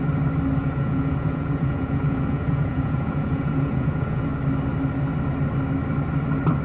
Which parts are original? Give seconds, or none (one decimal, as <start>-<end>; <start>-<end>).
0.0-0.6; 4.3-6.6